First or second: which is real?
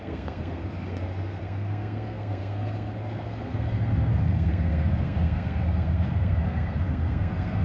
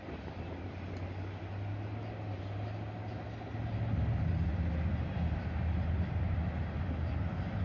second